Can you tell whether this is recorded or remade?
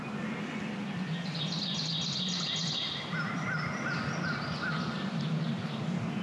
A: recorded